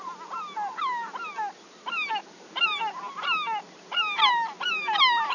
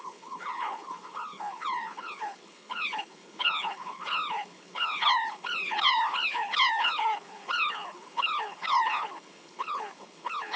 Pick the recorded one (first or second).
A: first